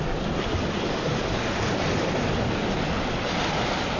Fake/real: real